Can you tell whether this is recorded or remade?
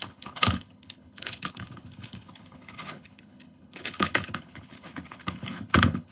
remade